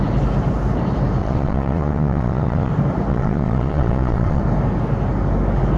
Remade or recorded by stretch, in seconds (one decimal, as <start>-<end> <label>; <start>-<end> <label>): 0.0-1.2 recorded; 1.2-2.7 remade; 2.7-3.1 recorded; 3.1-4.4 remade; 4.4-5.8 recorded

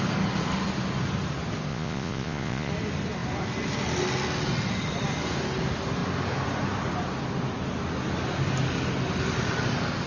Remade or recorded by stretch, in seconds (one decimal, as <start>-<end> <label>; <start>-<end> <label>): 0.0-1.7 recorded; 1.7-2.7 remade; 2.7-10.1 recorded

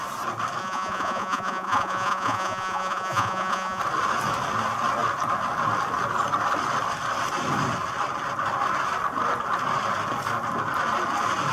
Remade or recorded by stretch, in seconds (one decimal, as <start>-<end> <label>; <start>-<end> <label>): 0.0-0.6 recorded; 0.6-3.8 remade; 3.8-11.5 recorded

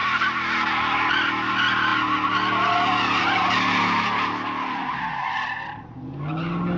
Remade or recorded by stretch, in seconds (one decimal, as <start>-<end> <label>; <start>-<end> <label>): 0.0-6.8 recorded

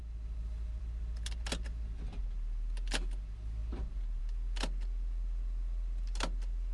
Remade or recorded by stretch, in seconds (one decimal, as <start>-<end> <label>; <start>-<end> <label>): 0.0-6.7 recorded